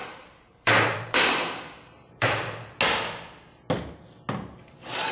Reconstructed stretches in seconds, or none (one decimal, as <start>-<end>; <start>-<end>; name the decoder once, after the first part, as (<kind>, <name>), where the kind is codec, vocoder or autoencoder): 0.0-2.3 (vocoder, BigVGAN v2)